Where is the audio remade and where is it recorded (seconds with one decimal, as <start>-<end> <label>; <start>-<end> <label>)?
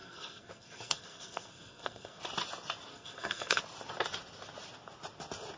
0.0-2.2 remade; 2.2-2.9 recorded; 2.9-3.6 remade; 3.6-5.6 recorded